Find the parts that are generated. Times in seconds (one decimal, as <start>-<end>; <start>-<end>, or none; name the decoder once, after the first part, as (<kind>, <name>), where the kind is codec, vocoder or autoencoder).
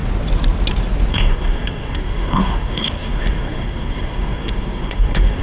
1.1-5.4 (codec, SNAC)